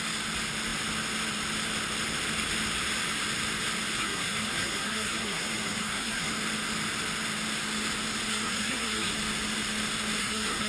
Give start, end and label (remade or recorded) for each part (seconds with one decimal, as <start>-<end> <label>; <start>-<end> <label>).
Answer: 0.0-4.0 recorded; 4.0-6.3 remade; 6.3-8.3 recorded; 8.3-9.1 remade; 9.1-10.2 recorded; 10.2-10.7 remade